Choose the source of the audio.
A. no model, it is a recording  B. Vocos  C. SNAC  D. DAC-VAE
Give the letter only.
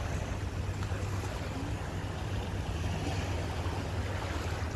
A